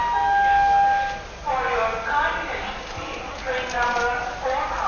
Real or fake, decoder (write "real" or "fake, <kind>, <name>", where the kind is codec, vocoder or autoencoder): real